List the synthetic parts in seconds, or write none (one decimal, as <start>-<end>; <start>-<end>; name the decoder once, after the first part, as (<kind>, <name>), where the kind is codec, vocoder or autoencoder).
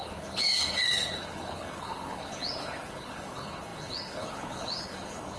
0.0-5.4 (codec, HILCodec)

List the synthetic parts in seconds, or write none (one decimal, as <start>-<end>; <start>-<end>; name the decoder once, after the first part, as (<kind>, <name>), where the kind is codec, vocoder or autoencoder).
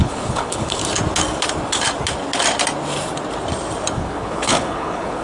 0.0-0.8 (codec, HILCodec); 3.9-5.2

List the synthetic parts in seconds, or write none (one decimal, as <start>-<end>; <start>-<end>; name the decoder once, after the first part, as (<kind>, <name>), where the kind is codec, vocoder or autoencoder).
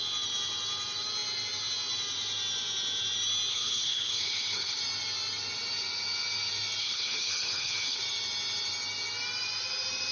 3.5-4.8 (codec, HILCodec); 6.8-8.0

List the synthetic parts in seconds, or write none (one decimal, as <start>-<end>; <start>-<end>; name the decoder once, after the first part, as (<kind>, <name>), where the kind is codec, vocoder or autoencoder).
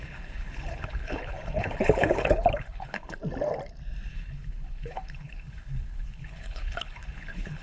0.0-3.2 (codec, HILCodec); 4.1-7.6